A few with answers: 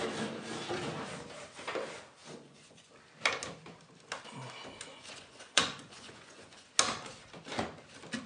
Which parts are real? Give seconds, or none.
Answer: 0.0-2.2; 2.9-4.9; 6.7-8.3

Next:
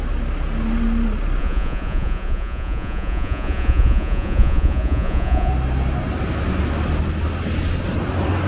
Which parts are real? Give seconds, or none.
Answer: 0.0-1.4; 5.5-8.5

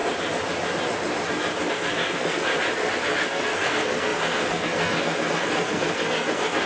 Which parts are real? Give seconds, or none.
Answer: 0.0-1.7; 2.5-3.0

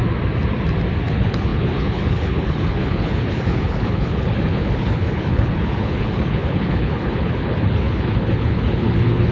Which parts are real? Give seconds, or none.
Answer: 0.0-1.1

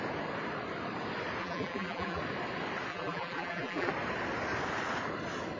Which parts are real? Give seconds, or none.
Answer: 0.0-1.4; 2.2-2.9; 3.9-5.6